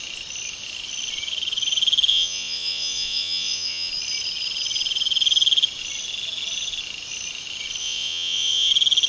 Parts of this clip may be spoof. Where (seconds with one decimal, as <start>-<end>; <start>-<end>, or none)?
2.1-3.9; 7.8-8.7